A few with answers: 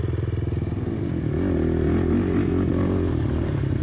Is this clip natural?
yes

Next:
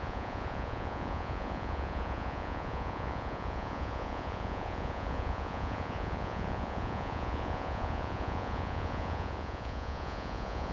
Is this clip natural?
no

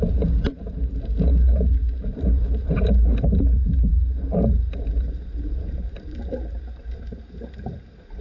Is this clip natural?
no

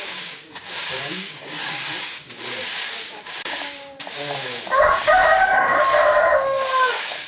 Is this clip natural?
no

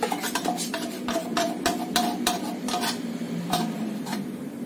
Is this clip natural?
no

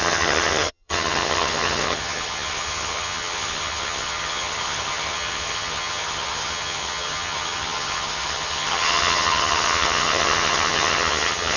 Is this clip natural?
no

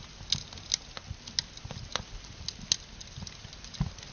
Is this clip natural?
yes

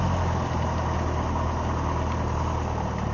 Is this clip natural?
yes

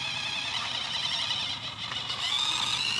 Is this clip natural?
yes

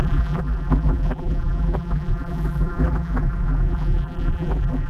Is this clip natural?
no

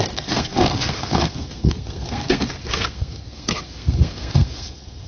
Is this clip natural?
no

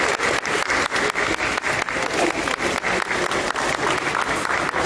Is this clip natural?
yes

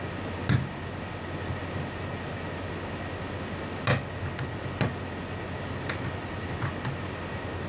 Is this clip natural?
yes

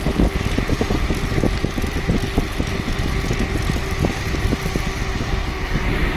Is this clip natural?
yes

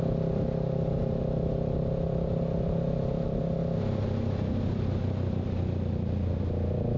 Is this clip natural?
yes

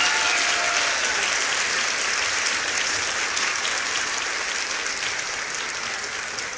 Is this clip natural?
yes